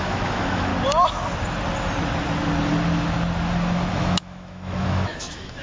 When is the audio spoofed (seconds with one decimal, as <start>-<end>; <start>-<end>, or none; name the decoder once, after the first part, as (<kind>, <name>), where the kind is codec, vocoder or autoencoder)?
0.0-0.7 (autoencoder, DAC-VAE); 3.9-5.6